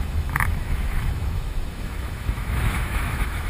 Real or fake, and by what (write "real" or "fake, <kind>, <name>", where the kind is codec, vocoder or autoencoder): fake, autoencoder, DAC-VAE